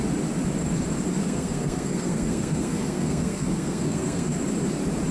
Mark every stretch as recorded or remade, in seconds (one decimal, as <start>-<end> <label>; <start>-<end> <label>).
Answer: 0.0-1.2 recorded; 1.2-4.3 remade; 4.3-5.1 recorded